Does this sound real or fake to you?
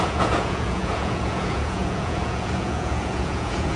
fake